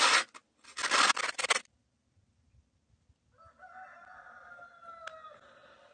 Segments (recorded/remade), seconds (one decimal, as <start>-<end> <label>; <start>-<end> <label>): 0.0-5.9 recorded